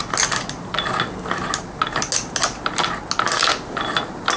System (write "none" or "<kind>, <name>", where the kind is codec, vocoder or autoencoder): none